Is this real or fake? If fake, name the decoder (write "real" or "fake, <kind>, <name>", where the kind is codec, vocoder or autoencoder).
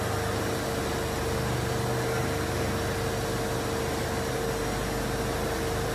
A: real